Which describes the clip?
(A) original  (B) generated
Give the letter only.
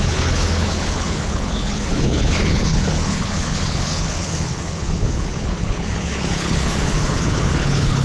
B